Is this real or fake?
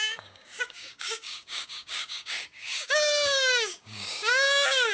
fake